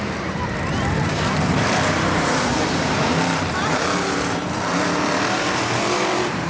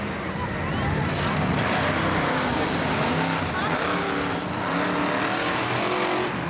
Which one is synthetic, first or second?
first